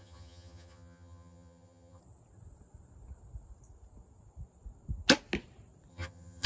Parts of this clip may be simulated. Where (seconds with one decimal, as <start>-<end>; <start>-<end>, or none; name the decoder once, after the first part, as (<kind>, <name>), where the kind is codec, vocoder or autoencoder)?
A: 0.0-2.0 (vocoder, HiFi-GAN); 5.9-6.5